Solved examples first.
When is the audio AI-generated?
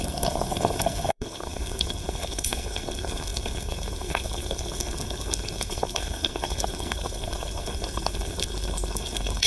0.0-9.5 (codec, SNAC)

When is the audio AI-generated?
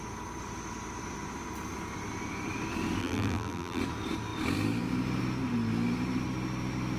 3.0-3.8 (vocoder, BigVGAN v2)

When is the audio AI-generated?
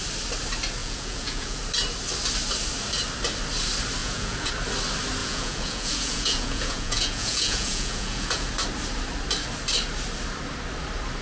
0.8-1.6 (vocoder, Vocos); 4.0-4.5; 5.2-8.5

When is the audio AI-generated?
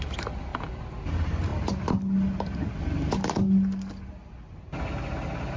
none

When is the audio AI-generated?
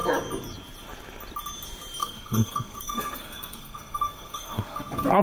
2.0-5.2 (codec, SNAC)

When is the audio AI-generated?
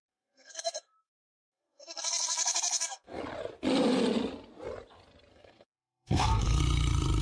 0.0-3.2 (codec, SNAC); 5.3-6.6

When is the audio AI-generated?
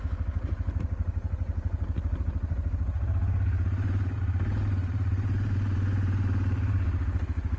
0.0-7.6 (vocoder, BigVGAN v2)